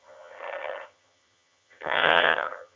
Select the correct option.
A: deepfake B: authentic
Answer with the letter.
A